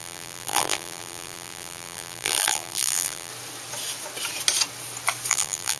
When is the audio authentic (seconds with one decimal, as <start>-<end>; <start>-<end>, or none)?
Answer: 3.3-5.3